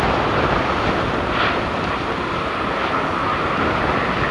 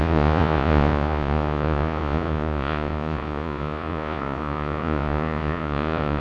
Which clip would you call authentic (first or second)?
first